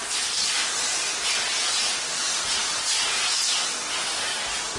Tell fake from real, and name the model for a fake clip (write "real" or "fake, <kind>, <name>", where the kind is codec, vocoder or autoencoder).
real